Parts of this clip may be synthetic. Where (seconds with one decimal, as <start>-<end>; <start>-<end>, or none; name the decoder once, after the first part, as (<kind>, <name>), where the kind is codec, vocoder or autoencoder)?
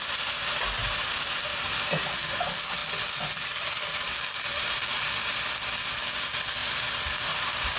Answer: 4.5-5.3 (vocoder, BigVGAN v2); 6.6-7.8